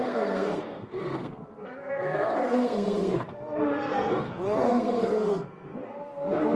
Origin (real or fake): fake